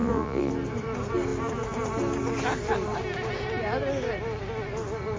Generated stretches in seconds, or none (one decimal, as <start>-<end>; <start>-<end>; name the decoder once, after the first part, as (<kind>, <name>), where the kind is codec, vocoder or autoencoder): 0.0-0.5 (vocoder, Vocos)